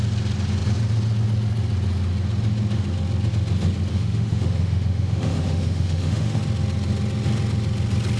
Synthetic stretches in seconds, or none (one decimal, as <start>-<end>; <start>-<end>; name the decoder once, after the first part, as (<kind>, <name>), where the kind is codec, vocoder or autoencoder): 3.9-6.4 (autoencoder, DAC-VAE)